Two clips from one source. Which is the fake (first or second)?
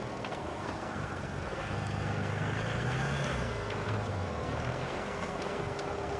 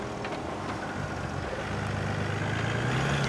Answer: first